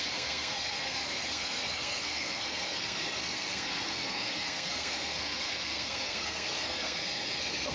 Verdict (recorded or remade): remade